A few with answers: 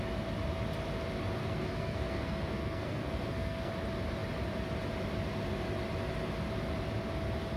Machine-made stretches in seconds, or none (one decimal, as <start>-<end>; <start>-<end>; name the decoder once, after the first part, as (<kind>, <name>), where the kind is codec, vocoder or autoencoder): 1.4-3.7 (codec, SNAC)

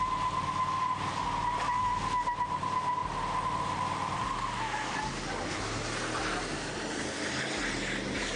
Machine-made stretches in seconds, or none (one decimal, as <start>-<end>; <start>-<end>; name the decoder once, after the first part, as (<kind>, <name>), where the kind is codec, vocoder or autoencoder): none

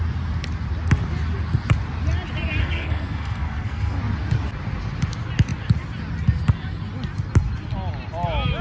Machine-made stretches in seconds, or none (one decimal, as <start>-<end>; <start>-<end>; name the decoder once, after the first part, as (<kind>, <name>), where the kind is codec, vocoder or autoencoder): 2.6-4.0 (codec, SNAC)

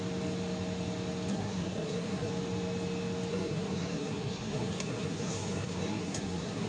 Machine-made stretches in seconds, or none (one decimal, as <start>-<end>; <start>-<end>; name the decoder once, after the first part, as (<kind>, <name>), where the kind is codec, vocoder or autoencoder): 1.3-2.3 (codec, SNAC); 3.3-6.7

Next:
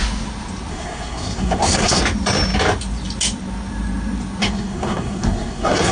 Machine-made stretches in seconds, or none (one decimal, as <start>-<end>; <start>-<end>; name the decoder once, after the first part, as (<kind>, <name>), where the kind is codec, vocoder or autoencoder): 0.7-2.0 (codec, SNAC); 4.4-5.9